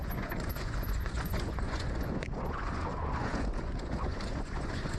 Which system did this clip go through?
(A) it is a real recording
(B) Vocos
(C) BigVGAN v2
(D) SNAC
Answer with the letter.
B